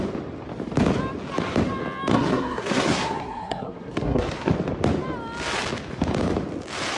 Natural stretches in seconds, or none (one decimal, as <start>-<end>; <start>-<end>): 0.0-2.1; 4.5-7.0